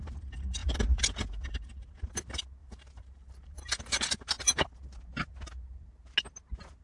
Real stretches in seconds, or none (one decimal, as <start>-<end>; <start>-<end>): 0.0-2.6; 4.7-6.8